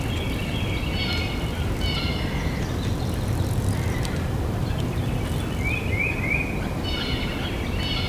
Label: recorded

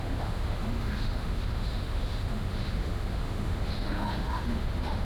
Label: remade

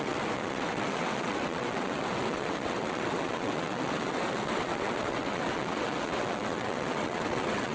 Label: remade